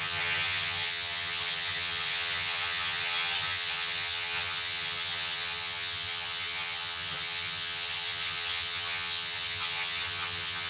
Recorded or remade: remade